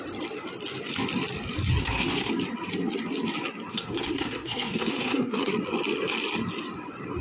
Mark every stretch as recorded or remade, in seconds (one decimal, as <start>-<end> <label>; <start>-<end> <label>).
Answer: 0.0-1.8 recorded; 1.8-2.3 remade; 2.3-3.7 recorded; 3.7-5.5 remade; 5.5-7.2 recorded